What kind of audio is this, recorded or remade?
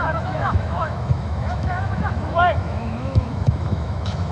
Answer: remade